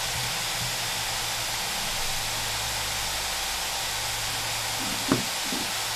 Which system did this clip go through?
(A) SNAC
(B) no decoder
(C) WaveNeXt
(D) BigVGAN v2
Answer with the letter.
B